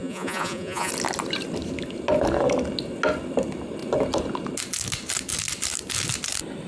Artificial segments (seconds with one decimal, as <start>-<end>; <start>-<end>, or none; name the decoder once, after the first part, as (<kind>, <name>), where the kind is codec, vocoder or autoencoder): 0.0-0.9 (vocoder, Vocos)